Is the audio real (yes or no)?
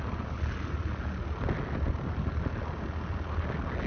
yes